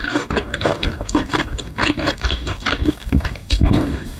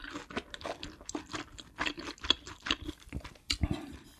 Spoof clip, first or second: first